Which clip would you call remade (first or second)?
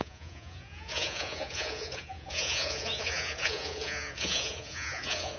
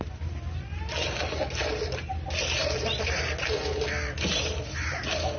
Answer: first